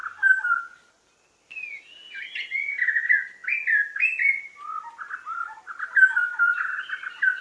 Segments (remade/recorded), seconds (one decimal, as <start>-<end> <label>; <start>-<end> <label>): 0.0-7.4 recorded